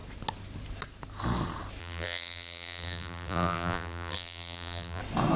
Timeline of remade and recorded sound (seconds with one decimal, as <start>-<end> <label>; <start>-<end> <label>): 0.0-1.8 recorded; 1.8-5.0 remade; 5.0-5.4 recorded